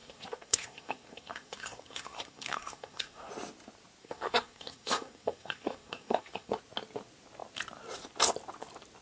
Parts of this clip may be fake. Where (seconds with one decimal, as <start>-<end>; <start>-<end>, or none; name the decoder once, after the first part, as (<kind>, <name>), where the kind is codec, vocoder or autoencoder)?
0.0-3.3 (codec, SNAC); 4.0-6.5